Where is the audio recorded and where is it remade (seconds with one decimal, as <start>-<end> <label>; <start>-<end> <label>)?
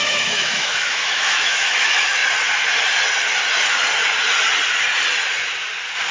0.0-2.2 remade; 2.2-6.1 recorded